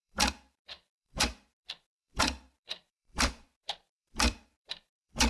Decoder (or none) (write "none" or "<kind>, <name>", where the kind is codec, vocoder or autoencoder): vocoder, BigVGAN v2